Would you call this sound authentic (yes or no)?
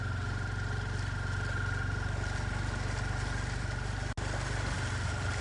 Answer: yes